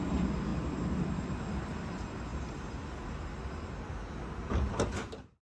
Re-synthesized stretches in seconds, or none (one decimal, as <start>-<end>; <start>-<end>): none